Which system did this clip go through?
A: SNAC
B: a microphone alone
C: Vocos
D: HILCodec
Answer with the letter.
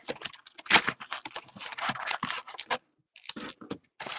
B